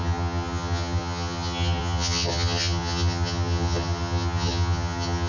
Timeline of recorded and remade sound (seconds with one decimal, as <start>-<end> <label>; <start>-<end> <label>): 0.0-5.3 remade